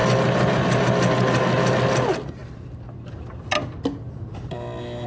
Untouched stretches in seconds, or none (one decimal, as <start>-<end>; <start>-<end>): 0.0-5.1